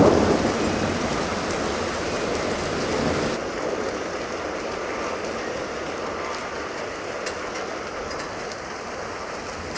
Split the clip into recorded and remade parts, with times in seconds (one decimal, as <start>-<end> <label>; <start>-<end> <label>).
0.0-9.8 recorded